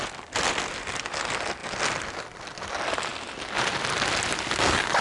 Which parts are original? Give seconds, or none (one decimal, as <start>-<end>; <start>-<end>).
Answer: 0.0-5.0